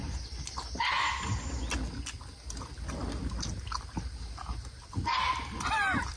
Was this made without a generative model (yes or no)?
yes